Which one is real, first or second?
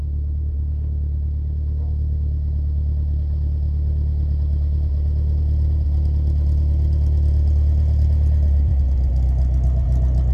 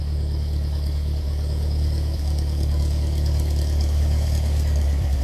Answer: first